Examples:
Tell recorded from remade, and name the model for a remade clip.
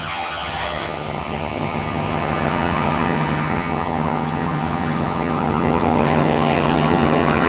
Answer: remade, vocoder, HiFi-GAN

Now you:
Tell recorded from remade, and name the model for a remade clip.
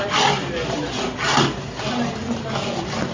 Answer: recorded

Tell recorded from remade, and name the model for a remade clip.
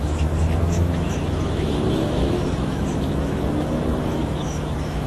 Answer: remade, autoencoder, DAC-VAE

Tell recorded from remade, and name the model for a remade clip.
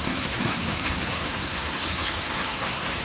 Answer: remade, codec, SNAC